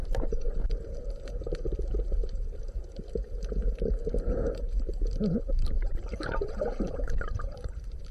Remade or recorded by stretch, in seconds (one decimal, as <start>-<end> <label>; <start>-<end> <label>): 0.0-8.1 remade

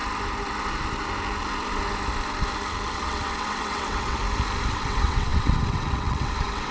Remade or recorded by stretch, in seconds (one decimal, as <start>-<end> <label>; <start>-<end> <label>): 0.0-2.9 recorded; 2.9-4.2 remade; 4.2-4.7 recorded; 4.7-6.7 remade